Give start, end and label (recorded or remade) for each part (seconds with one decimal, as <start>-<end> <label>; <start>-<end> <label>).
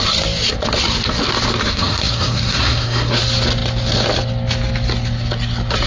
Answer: 0.0-1.6 recorded; 1.6-3.2 remade; 3.2-5.9 recorded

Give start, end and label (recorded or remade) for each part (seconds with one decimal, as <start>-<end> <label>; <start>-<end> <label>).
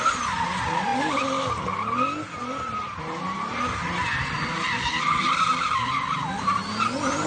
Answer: 0.0-7.3 recorded